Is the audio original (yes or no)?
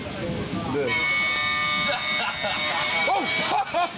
yes